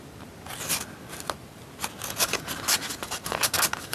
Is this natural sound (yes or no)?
yes